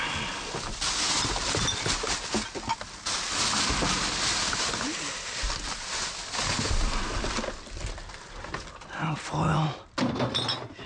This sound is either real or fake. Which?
real